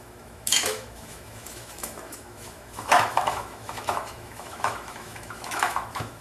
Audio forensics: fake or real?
fake